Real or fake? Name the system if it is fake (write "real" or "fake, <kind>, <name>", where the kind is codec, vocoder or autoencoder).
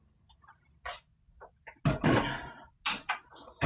real